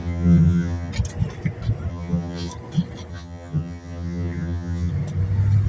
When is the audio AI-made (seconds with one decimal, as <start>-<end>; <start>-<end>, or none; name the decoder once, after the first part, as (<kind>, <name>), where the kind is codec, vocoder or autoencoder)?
0.0-0.9 (vocoder, HiFi-GAN); 1.9-2.5; 3.1-4.9